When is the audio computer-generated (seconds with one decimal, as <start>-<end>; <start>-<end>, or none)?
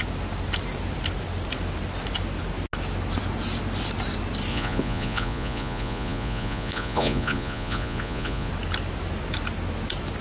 4.5-8.5